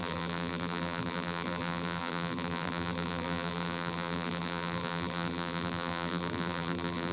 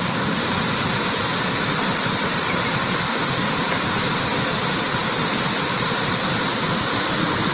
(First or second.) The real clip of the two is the second